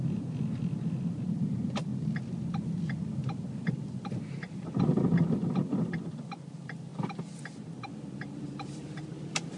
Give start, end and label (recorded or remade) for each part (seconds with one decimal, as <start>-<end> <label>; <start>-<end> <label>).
0.0-1.9 remade; 1.9-2.8 recorded; 2.8-6.9 remade; 6.9-7.4 recorded; 7.4-9.6 remade